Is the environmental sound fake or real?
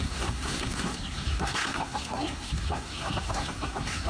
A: fake